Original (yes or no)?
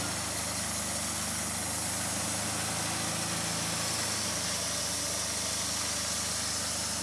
yes